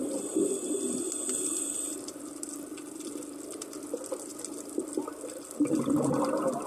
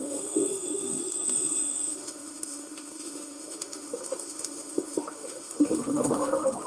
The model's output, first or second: second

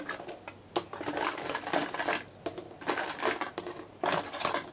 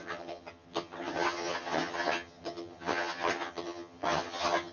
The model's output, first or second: second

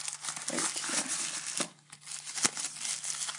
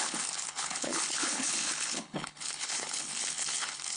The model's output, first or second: second